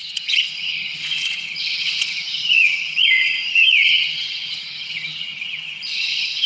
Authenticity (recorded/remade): remade